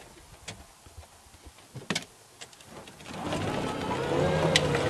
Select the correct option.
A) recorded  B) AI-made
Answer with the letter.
A